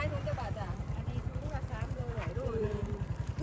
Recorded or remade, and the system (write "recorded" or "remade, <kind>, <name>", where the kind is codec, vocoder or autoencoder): remade, vocoder, BigVGAN v2